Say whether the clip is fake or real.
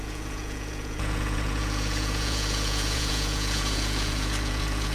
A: fake